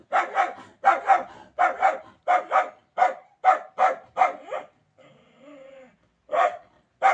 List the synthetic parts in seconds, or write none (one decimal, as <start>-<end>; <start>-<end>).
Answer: none

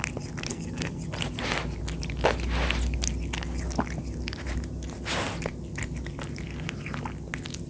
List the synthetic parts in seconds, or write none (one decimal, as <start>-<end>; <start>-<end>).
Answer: 0.5-1.0

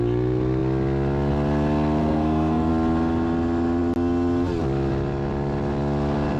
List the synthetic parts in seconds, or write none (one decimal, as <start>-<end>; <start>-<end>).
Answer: 2.0-2.7

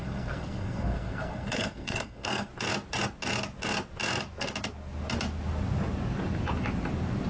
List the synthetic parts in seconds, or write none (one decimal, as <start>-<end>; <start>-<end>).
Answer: 0.0-2.5

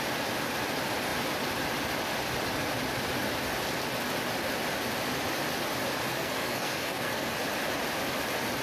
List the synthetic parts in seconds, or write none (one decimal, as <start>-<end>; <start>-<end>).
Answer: 6.1-7.3

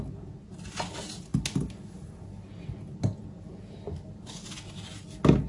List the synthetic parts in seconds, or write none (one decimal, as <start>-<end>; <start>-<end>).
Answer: none

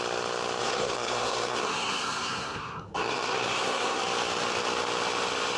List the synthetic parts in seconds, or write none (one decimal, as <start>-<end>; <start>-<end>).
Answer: 0.6-4.0

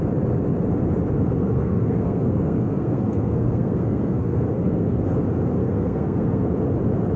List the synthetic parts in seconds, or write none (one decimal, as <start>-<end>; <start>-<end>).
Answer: 1.4-5.0; 5.6-6.5